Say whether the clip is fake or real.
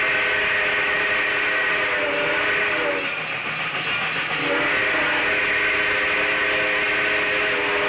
real